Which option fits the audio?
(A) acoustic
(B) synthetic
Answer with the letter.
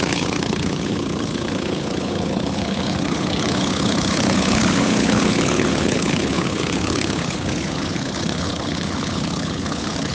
B